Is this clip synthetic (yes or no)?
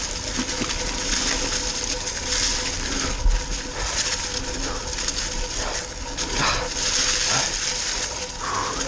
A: no